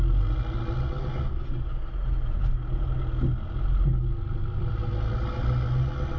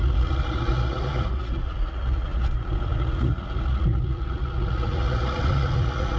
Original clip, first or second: first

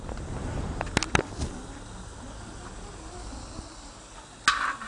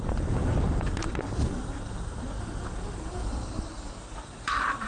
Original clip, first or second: first